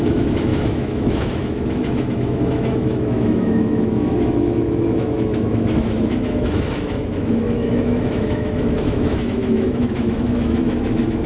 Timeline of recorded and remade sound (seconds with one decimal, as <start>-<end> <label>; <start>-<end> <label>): 0.0-11.3 remade